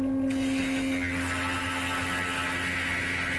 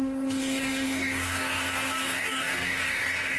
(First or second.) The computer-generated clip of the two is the second